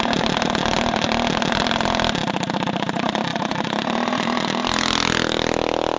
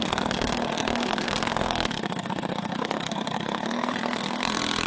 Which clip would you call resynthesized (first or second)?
second